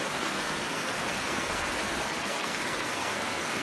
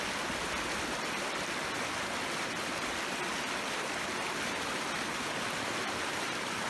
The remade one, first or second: first